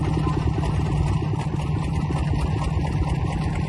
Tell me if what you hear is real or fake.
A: real